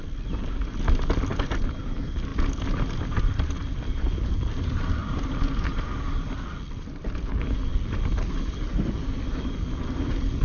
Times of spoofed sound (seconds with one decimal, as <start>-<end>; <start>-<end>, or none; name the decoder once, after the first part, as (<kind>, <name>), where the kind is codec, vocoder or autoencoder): none